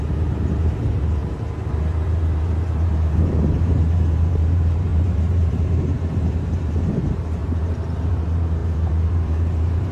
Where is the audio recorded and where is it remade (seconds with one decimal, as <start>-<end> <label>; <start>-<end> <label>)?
0.0-9.9 remade